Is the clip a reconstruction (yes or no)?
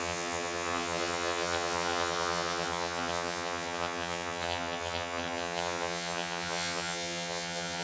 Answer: yes